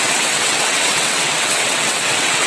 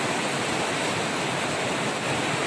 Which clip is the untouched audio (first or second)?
second